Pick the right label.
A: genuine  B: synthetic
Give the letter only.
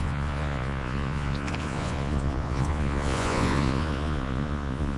B